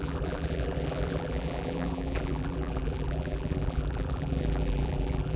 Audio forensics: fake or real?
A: fake